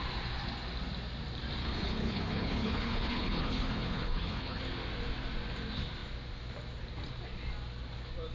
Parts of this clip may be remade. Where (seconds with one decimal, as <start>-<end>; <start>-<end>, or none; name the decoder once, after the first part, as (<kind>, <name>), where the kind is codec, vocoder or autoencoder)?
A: 1.6-4.6 (codec, HILCodec)